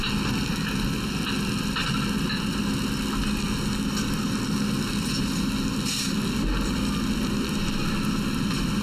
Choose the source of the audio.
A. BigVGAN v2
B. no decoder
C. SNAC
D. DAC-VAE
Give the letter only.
B